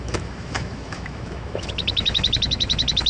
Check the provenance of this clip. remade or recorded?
remade